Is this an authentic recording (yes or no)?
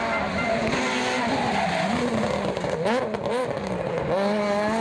yes